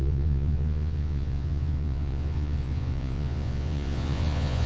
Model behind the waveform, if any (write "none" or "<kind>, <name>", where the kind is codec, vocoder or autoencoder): vocoder, Vocos